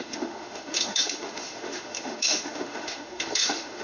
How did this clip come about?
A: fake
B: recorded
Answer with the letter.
A